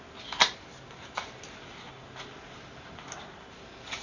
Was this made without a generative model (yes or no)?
yes